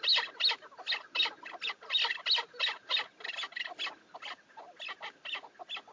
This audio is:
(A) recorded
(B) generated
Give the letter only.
A